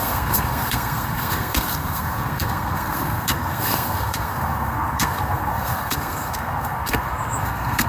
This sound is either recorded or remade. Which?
remade